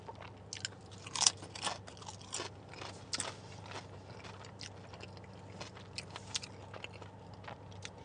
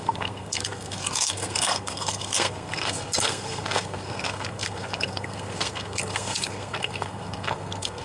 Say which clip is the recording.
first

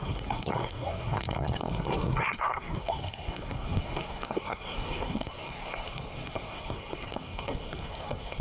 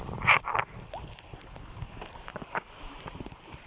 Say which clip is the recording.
second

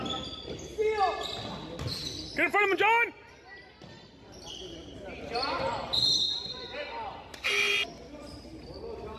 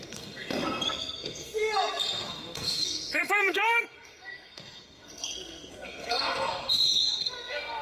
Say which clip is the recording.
first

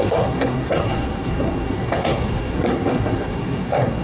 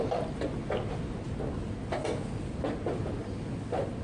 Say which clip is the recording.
second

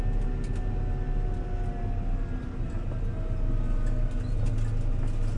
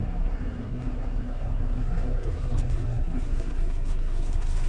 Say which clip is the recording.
first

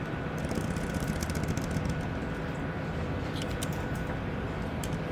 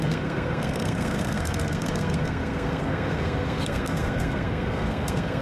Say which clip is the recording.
first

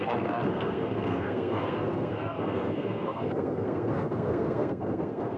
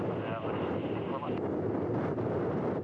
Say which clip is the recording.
second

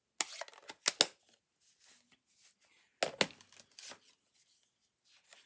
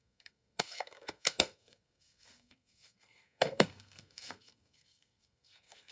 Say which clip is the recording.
first